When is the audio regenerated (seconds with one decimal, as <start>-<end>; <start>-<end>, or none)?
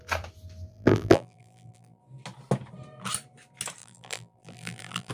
0.7-2.0; 3.8-5.1